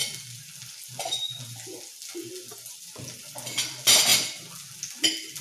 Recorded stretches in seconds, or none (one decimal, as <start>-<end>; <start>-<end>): 0.0-5.4